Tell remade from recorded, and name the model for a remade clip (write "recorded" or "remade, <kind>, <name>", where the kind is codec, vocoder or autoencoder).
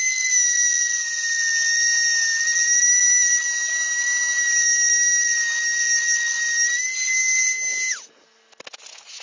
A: recorded